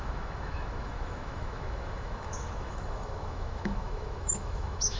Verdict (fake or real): fake